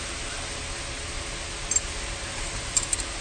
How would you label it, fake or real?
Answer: real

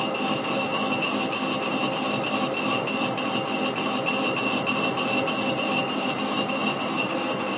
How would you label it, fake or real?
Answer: real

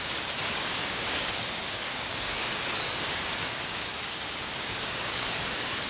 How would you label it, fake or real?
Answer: fake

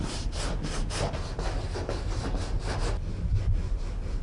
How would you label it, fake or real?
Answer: real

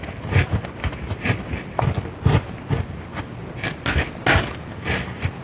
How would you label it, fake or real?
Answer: real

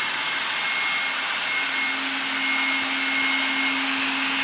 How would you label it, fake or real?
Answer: real